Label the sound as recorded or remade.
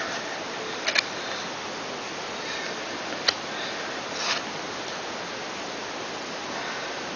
recorded